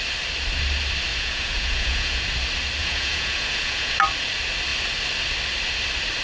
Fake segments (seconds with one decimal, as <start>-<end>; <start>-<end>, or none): 1.1-2.2; 2.8-4.0